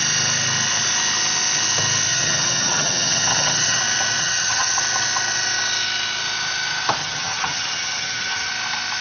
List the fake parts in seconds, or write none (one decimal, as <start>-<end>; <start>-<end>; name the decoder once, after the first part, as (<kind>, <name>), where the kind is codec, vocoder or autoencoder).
2.1-3.8 (vocoder, HiFi-GAN); 4.2-4.8; 7.0-8.5